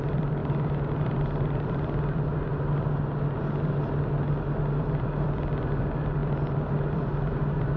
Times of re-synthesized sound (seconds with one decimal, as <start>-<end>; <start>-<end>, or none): 0.0-0.4; 0.9-2.5; 4.6-7.8